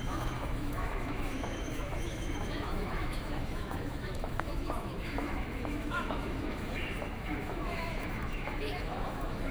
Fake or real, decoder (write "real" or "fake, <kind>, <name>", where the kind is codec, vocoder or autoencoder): fake, autoencoder, DAC-VAE